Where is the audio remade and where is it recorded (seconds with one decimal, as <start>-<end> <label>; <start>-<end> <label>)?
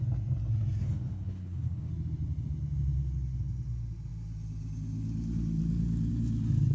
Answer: 0.0-0.8 recorded; 0.8-1.9 remade; 1.9-6.7 recorded